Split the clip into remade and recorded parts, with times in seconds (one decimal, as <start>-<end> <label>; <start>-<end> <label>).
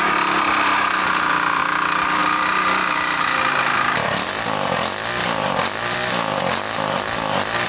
0.0-7.7 recorded